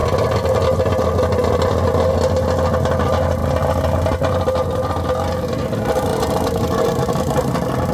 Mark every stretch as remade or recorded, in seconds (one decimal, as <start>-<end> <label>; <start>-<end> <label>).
0.0-7.9 recorded